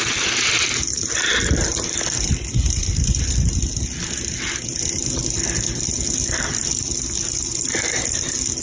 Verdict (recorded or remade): recorded